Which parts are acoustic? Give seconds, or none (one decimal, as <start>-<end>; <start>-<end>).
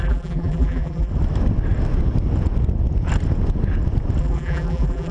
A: 1.1-4.2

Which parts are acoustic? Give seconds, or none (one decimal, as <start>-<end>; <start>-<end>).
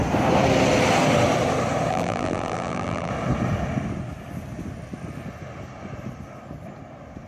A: 0.0-1.9; 3.1-7.3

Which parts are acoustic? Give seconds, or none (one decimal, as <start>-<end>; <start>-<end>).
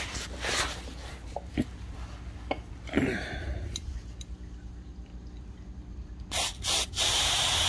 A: 1.7-2.7; 5.1-7.1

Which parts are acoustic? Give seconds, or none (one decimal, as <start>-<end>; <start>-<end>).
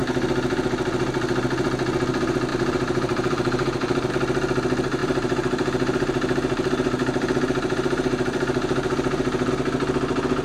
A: 0.0-2.5; 4.1-5.0; 9.5-10.4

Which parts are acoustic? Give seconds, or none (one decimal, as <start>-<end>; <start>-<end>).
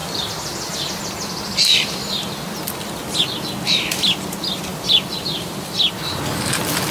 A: 3.0-3.9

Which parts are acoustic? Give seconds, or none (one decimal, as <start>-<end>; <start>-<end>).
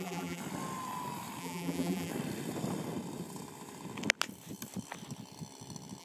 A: 0.4-1.4; 2.1-6.0